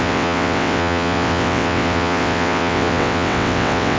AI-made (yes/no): yes